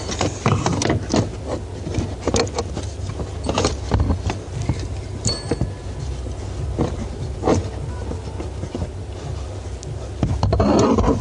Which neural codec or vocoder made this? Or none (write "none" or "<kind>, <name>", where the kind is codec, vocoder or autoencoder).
none